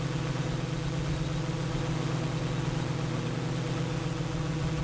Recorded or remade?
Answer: remade